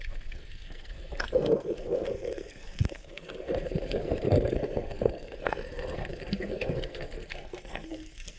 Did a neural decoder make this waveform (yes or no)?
yes